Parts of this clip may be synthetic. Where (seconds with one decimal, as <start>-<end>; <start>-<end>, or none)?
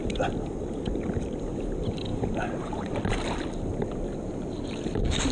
2.1-2.9